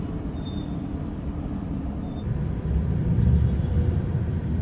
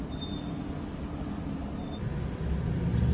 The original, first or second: second